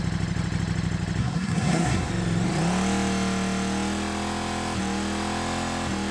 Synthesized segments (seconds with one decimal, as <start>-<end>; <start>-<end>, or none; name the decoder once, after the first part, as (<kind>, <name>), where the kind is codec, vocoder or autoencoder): 1.2-2.1 (codec, SNAC)